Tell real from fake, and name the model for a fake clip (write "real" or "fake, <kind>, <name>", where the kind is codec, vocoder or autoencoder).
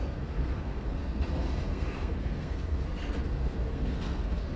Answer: fake, codec, SNAC